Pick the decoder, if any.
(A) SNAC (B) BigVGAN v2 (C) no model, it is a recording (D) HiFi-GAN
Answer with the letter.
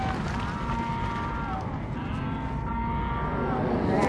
C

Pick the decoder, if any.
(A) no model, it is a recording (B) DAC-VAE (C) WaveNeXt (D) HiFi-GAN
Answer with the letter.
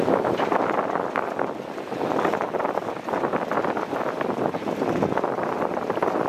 A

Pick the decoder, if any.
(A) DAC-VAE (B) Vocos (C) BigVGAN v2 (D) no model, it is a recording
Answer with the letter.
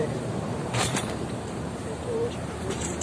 C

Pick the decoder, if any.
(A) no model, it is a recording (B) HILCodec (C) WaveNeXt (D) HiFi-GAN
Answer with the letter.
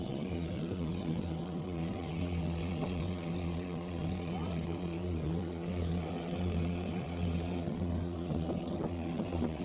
C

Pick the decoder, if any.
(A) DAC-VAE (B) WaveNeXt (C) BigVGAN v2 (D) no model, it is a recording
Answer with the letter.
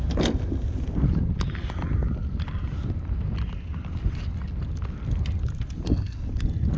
D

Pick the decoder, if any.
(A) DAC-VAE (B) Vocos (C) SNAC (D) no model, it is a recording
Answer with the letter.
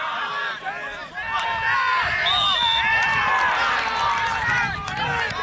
D